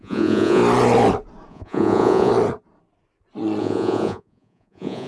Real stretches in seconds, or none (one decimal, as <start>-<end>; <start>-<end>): 0.6-1.5; 2.3-3.6